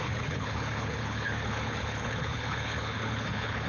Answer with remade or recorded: remade